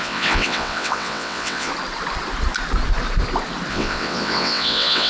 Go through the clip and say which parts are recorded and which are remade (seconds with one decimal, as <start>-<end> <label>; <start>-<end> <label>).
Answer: 0.0-1.7 remade; 1.7-3.7 recorded; 3.7-5.1 remade